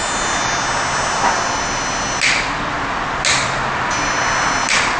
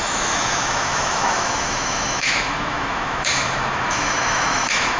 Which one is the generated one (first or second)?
second